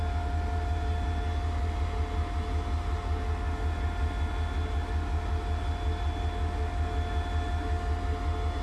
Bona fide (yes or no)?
yes